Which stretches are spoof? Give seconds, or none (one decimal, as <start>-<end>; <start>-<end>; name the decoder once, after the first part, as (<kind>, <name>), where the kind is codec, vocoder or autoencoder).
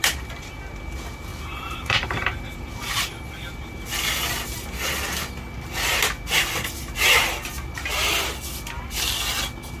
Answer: 1.3-2.7 (vocoder, BigVGAN v2)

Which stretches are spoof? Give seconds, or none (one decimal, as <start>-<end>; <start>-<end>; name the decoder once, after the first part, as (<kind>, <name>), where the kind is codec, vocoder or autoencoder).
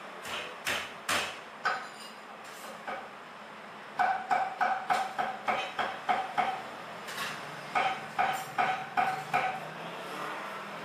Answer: none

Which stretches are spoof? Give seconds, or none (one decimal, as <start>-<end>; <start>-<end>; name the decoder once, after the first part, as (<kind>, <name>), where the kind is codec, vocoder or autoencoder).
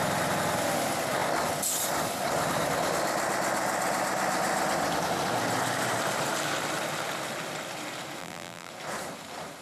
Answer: 8.2-8.7 (vocoder, BigVGAN v2)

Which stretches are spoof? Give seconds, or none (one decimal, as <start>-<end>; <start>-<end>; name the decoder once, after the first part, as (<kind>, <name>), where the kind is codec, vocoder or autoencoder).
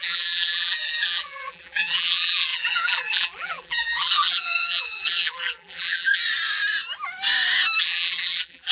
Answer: 0.0-6.2 (vocoder, BigVGAN v2); 7.8-8.7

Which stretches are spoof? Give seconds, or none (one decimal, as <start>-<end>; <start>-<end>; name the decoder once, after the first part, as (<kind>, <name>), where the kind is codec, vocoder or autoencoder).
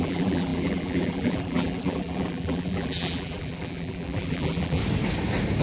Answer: 0.0-4.8 (vocoder, BigVGAN v2)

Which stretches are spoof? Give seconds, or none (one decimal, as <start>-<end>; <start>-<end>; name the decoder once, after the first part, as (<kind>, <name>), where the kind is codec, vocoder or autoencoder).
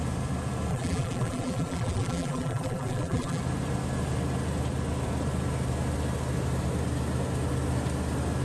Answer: 0.7-3.4 (vocoder, BigVGAN v2)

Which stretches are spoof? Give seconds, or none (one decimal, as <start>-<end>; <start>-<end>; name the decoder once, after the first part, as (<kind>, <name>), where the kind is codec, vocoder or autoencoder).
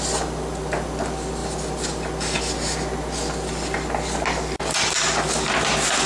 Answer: none